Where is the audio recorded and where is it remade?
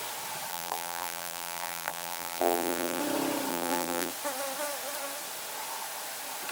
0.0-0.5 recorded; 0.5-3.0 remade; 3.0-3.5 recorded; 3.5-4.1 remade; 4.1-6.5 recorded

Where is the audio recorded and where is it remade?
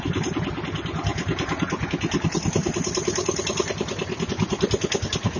0.0-5.4 recorded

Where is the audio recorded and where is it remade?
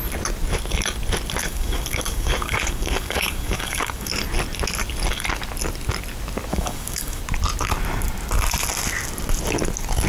0.0-1.4 recorded; 1.4-4.1 remade; 4.1-6.5 recorded; 6.5-7.2 remade; 7.2-10.1 recorded